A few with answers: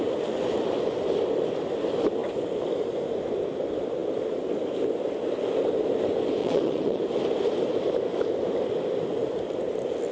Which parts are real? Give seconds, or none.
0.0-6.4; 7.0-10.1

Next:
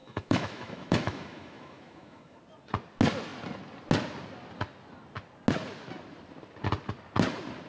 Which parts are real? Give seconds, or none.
2.4-7.7